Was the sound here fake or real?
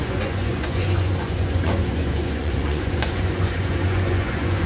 fake